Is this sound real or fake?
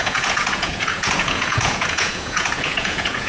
fake